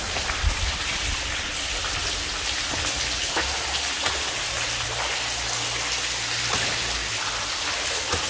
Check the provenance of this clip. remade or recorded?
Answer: recorded